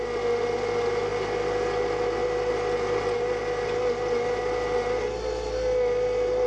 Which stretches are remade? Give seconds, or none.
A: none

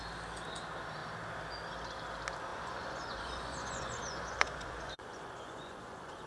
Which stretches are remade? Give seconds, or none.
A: 2.5-6.3 (vocoder, Vocos)

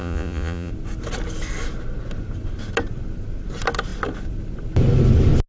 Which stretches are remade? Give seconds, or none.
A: 0.0-0.7 (vocoder, Vocos)

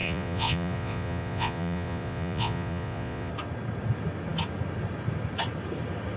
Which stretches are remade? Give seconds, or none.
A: 0.0-3.3 (vocoder, Vocos)

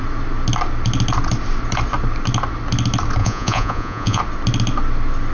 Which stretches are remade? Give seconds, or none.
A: 3.2-4.2 (vocoder, Vocos)